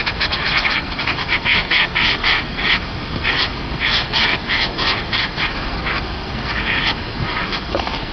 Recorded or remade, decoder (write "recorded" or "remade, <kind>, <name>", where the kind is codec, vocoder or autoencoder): remade, codec, SNAC